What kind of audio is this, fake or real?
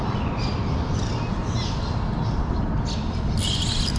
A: real